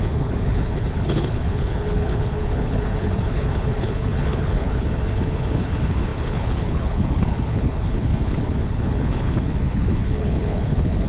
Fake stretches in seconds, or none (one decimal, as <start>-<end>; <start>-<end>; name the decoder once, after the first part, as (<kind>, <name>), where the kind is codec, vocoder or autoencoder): 0.0-11.1 (codec, HILCodec)